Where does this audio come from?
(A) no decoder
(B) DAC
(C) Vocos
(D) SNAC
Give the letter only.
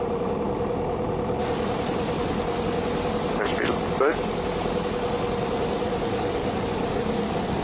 A